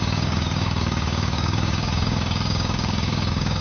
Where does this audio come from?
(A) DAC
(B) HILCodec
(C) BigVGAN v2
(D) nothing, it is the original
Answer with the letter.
A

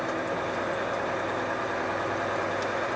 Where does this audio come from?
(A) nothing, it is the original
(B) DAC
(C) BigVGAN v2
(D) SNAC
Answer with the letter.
A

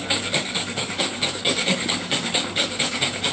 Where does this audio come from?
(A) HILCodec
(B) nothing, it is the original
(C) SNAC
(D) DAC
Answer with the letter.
D